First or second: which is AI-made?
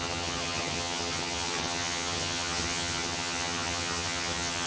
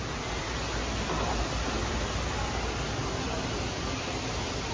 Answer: first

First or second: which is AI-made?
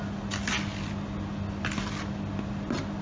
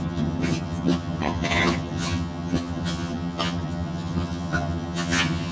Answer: second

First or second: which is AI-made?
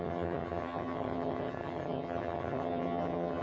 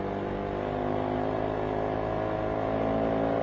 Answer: first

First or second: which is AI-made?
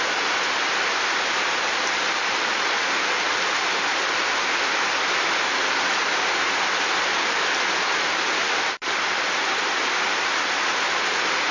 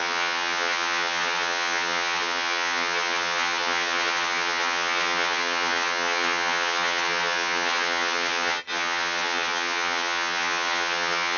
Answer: second